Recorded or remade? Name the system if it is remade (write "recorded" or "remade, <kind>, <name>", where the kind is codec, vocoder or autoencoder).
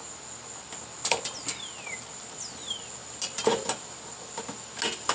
recorded